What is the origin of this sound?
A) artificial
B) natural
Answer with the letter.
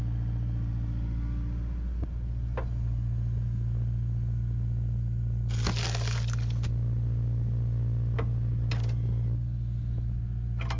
B